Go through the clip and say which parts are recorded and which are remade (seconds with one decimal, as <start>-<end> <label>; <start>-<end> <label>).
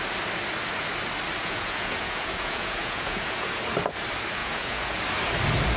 0.0-1.4 recorded; 1.4-3.6 remade; 3.6-4.4 recorded; 4.4-5.0 remade; 5.0-5.8 recorded